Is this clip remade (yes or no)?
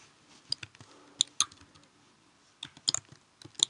no